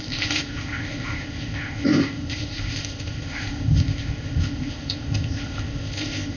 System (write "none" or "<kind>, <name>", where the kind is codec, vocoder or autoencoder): codec, ZipCodec